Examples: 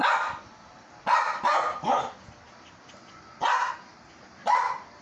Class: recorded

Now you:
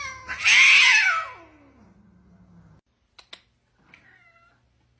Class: recorded